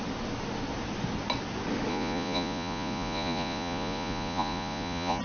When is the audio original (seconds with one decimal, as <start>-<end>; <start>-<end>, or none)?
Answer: 0.0-1.9